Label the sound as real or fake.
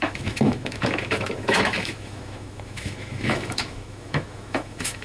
fake